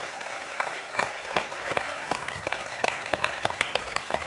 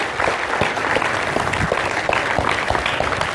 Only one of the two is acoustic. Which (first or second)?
second